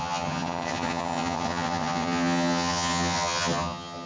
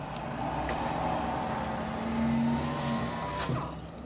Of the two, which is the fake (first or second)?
first